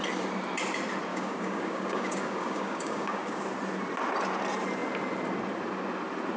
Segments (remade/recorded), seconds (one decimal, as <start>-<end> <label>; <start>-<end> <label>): 0.0-1.1 recorded; 1.1-3.4 remade; 3.4-6.4 recorded